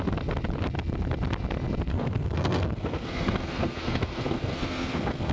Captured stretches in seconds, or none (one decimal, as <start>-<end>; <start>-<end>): 0.0-1.9